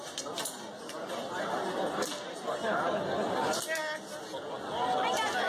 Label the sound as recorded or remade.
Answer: recorded